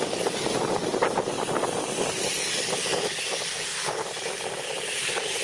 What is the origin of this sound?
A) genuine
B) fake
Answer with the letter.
A